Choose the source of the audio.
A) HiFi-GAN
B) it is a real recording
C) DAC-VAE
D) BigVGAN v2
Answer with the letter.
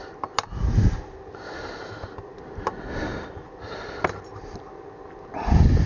B